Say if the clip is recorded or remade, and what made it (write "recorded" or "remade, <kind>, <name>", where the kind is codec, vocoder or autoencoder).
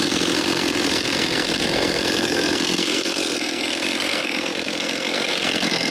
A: remade, codec, SNAC